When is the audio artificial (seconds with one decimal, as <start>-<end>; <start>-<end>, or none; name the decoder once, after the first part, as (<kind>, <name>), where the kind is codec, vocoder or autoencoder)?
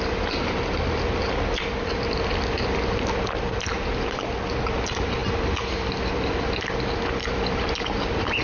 none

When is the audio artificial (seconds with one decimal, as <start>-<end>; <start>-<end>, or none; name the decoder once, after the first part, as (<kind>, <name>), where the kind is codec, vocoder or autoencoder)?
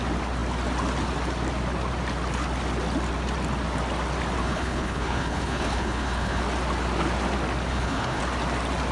4.4-6.4 (codec, HILCodec); 7.7-8.2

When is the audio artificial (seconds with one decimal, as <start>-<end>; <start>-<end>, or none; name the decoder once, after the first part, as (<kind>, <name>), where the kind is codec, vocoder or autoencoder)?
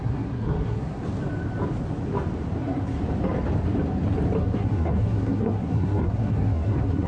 0.0-1.0 (codec, SNAC); 2.6-3.0; 4.4-7.1